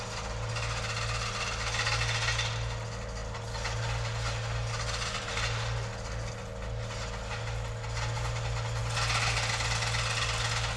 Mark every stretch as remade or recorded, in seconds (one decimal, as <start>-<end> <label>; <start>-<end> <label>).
0.0-10.8 recorded